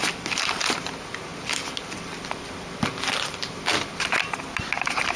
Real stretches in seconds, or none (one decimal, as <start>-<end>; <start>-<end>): 0.0-5.2